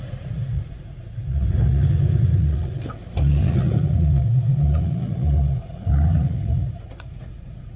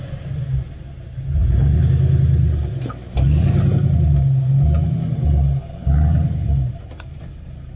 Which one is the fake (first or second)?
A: first